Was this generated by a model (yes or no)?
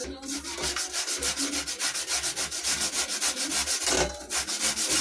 no